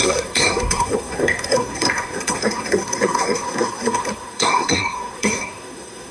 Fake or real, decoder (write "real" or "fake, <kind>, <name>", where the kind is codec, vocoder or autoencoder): fake, codec, SNAC